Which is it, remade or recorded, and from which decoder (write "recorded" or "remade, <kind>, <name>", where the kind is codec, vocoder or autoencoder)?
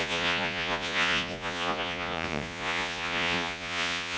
remade, vocoder, Vocos